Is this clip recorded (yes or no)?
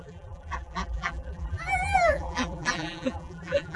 no